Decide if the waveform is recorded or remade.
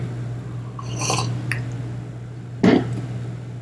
recorded